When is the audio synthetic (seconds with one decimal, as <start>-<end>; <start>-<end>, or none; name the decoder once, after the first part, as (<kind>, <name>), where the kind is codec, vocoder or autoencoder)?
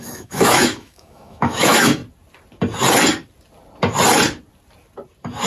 0.0-2.0 (autoencoder, DAC-VAE)